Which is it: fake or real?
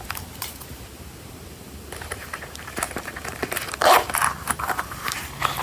fake